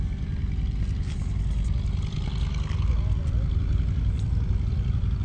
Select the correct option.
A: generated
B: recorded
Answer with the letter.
B